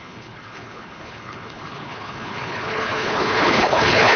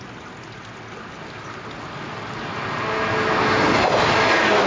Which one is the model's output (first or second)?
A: first